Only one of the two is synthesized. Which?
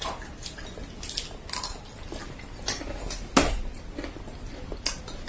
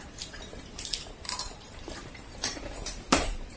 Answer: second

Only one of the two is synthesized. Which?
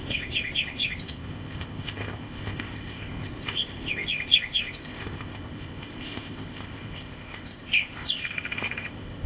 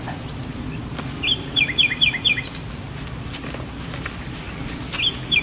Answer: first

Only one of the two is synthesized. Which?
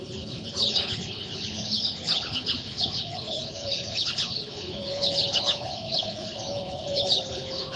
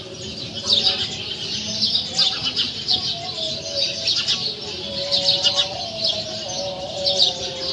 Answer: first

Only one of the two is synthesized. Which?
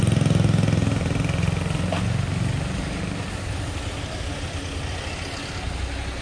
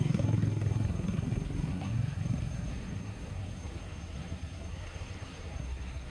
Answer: second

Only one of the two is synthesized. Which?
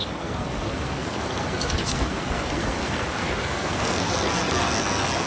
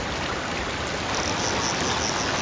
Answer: first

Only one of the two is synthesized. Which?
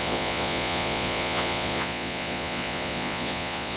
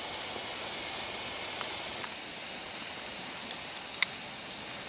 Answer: first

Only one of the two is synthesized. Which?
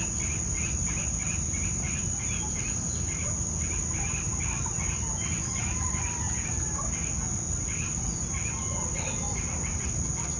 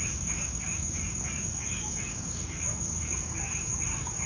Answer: second